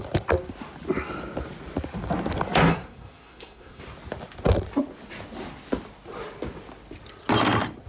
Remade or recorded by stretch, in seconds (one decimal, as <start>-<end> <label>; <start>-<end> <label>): 0.0-2.7 recorded; 2.7-3.8 remade; 3.8-7.9 recorded